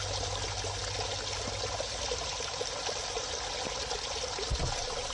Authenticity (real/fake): real